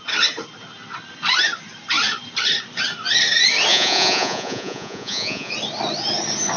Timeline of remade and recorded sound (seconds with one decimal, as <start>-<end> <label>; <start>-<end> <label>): 0.0-3.7 recorded; 3.7-5.5 remade; 5.5-6.6 recorded